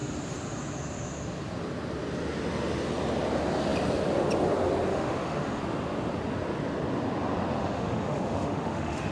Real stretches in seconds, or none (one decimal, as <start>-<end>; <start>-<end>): 0.0-4.9; 5.6-7.6